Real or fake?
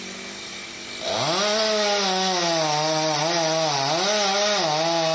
real